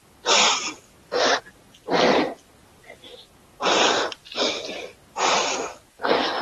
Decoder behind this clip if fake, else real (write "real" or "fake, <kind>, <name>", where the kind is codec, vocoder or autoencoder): real